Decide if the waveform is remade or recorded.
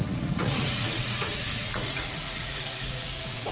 remade